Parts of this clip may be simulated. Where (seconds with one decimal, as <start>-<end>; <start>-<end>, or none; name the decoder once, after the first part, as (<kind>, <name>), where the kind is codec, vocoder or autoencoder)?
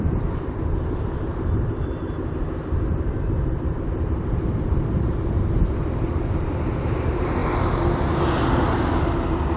0.0-7.4 (vocoder, BigVGAN v2); 8.2-9.6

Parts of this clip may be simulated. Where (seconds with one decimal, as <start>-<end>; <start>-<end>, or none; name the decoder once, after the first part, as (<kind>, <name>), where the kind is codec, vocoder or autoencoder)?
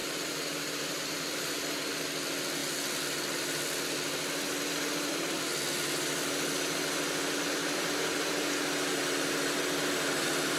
0.0-2.0 (vocoder, BigVGAN v2); 7.6-8.5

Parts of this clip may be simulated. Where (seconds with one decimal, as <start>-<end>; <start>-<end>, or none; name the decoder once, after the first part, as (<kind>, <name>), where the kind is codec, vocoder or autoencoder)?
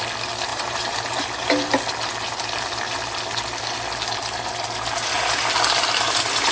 0.5-1.8 (vocoder, BigVGAN v2)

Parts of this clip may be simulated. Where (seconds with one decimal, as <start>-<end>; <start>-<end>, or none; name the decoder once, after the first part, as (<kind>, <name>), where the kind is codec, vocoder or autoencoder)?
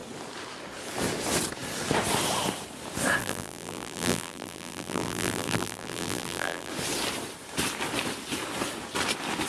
3.2-6.7 (vocoder, BigVGAN v2)